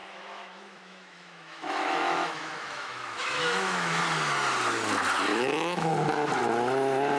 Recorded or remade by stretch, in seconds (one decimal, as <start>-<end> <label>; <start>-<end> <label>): 0.0-4.0 remade; 4.0-5.3 recorded; 5.3-5.9 remade; 5.9-7.2 recorded